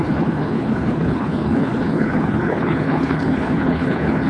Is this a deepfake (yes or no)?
yes